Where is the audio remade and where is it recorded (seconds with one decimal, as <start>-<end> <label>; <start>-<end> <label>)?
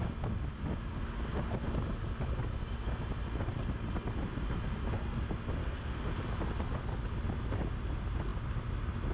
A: 0.0-5.6 recorded; 5.6-6.1 remade; 6.1-9.1 recorded